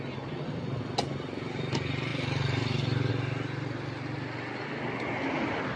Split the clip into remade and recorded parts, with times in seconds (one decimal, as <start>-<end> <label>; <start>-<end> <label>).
0.0-5.8 recorded

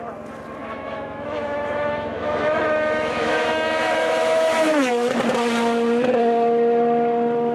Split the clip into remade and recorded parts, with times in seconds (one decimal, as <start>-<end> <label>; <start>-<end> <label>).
0.0-0.6 recorded; 0.6-4.9 remade; 4.9-7.5 recorded

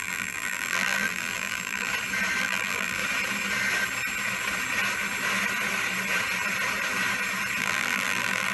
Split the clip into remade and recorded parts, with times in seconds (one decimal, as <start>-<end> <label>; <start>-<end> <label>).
0.0-1.9 remade; 1.9-2.4 recorded; 2.4-3.0 remade; 3.0-7.6 recorded; 7.6-8.5 remade

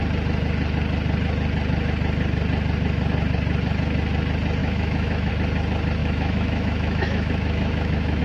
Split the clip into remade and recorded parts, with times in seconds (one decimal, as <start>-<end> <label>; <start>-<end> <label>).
0.0-4.6 recorded; 4.6-5.3 remade; 5.3-6.0 recorded; 6.0-8.2 remade

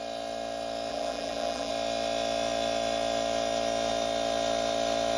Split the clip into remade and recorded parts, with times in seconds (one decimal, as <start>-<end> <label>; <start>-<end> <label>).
0.0-0.9 recorded; 0.9-1.7 remade; 1.7-5.2 recorded